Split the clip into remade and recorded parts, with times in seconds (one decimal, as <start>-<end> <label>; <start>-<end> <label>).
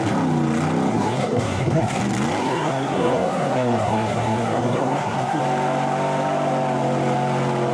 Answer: 0.0-0.9 recorded; 0.9-2.0 remade; 2.0-2.4 recorded; 2.4-5.4 remade; 5.4-7.7 recorded